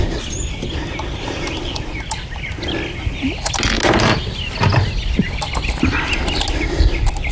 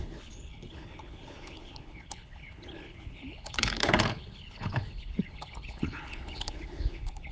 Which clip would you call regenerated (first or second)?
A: second